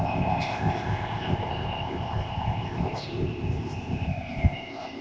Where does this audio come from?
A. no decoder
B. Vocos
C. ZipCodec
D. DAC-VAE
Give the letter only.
C